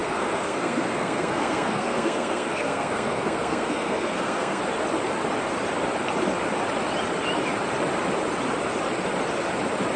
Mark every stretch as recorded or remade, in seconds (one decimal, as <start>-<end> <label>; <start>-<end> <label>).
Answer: 0.0-4.6 remade; 4.6-10.0 recorded